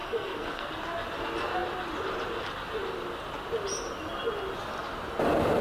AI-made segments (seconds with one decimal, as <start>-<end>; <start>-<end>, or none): 0.0-0.7